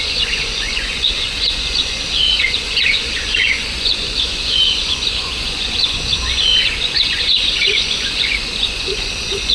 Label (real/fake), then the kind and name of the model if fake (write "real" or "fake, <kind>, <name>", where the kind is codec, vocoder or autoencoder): fake, vocoder, Vocos